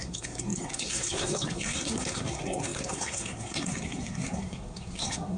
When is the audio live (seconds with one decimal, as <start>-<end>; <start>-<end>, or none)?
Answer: none